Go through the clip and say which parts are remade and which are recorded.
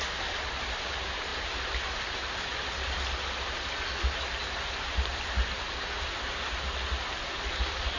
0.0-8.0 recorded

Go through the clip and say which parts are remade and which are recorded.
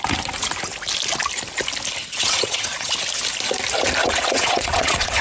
0.0-2.1 recorded; 2.1-2.9 remade; 2.9-4.0 recorded; 4.0-5.2 remade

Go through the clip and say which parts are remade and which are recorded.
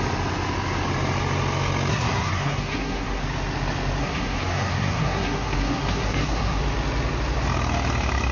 0.0-1.9 recorded; 1.9-3.2 remade; 3.2-4.0 recorded; 4.0-6.6 remade; 6.6-8.3 recorded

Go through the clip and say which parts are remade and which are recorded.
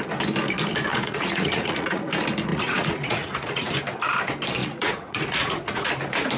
0.0-0.9 recorded; 0.9-2.0 remade; 2.0-2.5 recorded; 2.5-3.7 remade; 3.7-4.6 recorded; 4.6-5.9 remade; 5.9-6.4 recorded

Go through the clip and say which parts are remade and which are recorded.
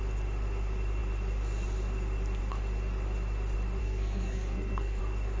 0.0-3.8 recorded; 3.8-5.0 remade; 5.0-5.4 recorded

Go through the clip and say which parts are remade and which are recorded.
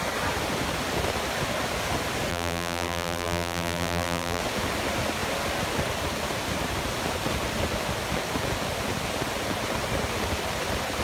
0.0-2.3 recorded; 2.3-4.4 remade; 4.4-11.0 recorded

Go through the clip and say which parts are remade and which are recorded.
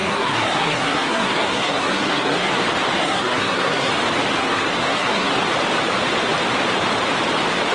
0.0-2.5 remade; 2.5-3.0 recorded; 3.0-3.9 remade; 3.9-4.4 recorded; 4.4-5.3 remade; 5.3-7.7 recorded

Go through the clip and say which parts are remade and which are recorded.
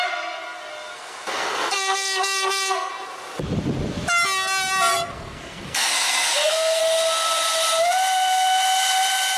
0.0-0.9 recorded; 0.9-2.9 remade; 2.9-4.9 recorded; 4.9-6.8 remade; 6.8-9.4 recorded